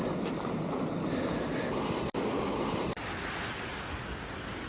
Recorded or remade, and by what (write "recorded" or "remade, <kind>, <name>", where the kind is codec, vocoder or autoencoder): recorded